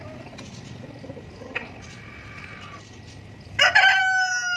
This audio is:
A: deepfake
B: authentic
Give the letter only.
B